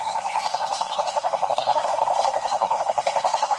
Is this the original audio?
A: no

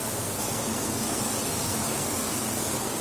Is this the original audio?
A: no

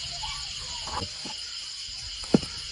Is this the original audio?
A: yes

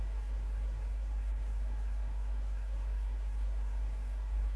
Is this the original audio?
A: no